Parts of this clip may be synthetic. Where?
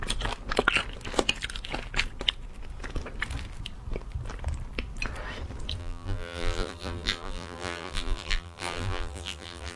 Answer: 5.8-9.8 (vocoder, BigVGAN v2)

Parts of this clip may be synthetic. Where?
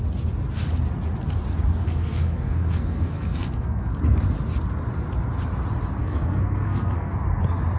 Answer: 1.8-3.9 (codec, SNAC); 6.0-7.1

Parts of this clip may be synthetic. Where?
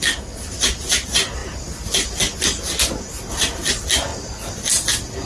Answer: none